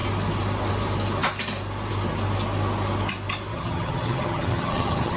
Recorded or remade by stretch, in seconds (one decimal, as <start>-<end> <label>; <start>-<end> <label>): 0.0-3.5 recorded; 3.5-5.2 remade